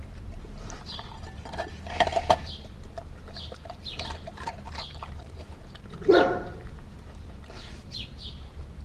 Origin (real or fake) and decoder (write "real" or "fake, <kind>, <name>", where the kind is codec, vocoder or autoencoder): fake, vocoder, BigVGAN v2